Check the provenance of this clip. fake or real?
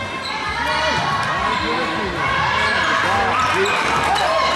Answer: real